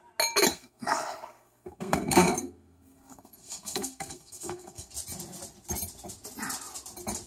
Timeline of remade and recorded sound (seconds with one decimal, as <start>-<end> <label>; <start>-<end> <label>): 0.0-0.5 recorded; 0.5-4.9 remade; 4.9-7.3 recorded